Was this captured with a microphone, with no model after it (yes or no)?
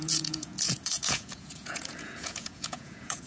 no